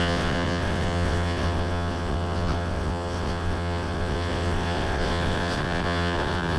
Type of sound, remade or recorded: remade